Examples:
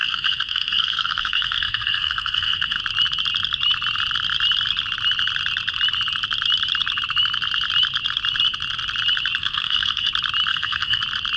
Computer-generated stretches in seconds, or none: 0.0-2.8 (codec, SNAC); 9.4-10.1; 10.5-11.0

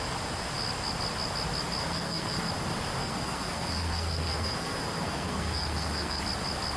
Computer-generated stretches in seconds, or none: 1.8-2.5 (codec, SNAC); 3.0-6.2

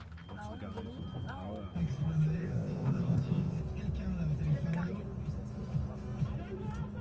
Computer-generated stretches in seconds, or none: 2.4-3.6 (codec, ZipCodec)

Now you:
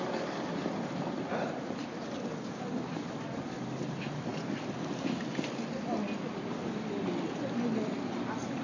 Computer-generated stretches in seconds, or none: none